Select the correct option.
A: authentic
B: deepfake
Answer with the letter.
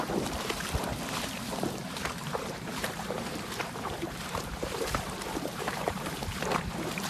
B